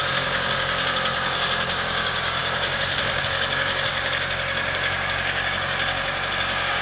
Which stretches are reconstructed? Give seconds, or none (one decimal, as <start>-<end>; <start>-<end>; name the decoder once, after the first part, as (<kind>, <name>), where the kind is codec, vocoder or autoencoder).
0.0-6.8 (codec, DAC)